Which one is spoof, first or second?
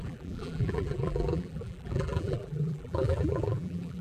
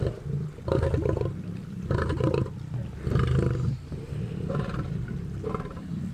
first